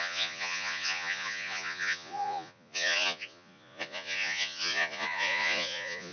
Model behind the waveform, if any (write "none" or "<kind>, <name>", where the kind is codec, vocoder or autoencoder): vocoder, Vocos